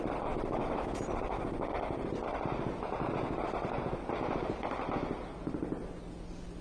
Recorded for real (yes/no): yes